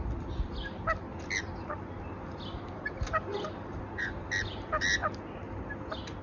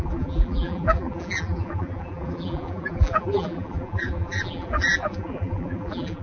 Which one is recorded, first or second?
first